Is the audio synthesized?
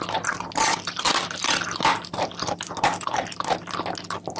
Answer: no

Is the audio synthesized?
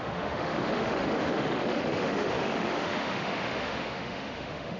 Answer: yes